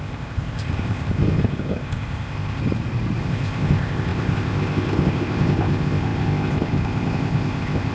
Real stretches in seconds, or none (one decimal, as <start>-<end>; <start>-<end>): 2.6-3.2

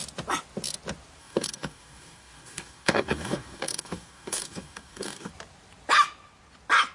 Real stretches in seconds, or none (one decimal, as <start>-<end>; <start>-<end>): 0.0-1.2; 5.3-6.9

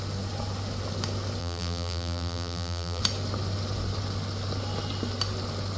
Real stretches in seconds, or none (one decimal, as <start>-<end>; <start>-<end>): 0.0-1.4; 3.0-5.8

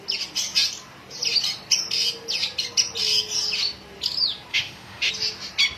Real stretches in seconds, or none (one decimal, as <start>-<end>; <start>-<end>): 0.0-4.5; 5.1-5.8

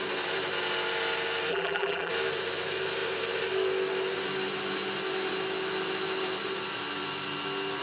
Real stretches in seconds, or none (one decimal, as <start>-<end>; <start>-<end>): 0.0-1.5; 2.1-7.8